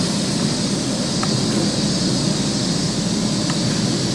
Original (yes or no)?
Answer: yes